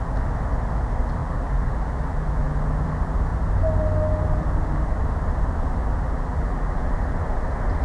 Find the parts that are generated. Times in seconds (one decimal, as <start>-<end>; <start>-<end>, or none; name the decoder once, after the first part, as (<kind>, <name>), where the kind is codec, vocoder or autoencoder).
1.2-2.5 (vocoder, BigVGAN v2); 5.8-6.9